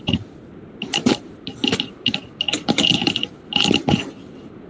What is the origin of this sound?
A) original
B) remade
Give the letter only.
A